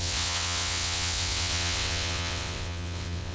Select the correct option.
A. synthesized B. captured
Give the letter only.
A